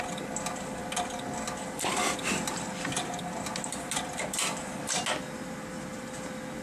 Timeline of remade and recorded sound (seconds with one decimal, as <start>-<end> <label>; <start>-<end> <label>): 0.0-6.6 recorded